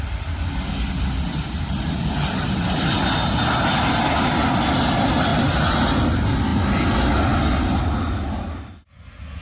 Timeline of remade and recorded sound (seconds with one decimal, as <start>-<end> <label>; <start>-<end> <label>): 0.0-9.4 recorded